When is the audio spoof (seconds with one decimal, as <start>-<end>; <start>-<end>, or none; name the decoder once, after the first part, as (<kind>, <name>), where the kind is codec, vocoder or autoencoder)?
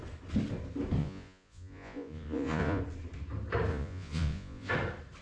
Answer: 1.0-2.8 (vocoder, Vocos); 3.7-4.7